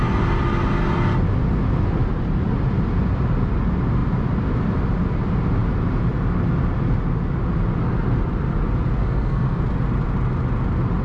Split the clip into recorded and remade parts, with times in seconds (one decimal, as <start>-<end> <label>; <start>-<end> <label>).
0.0-9.0 recorded; 9.0-9.6 remade; 9.6-11.0 recorded